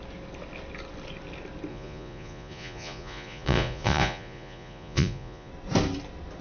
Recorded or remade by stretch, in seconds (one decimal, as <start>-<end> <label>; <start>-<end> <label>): 0.0-1.7 recorded; 1.7-5.5 remade; 5.5-6.4 recorded